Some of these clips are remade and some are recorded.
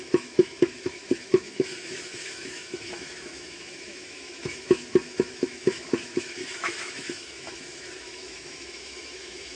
remade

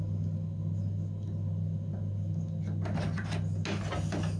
recorded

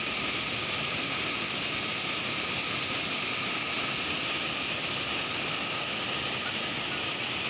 recorded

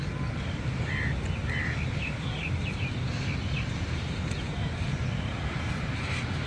recorded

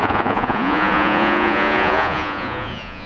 remade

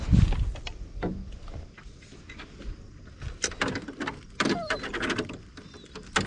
recorded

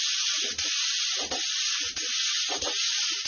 recorded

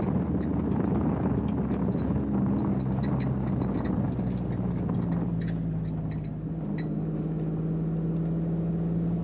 recorded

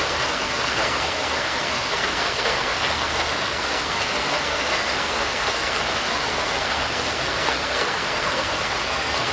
remade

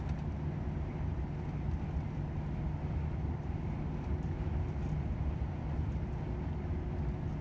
recorded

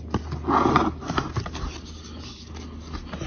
recorded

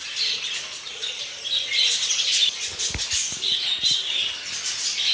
recorded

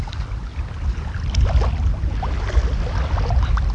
recorded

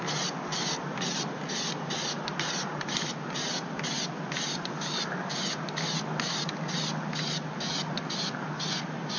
recorded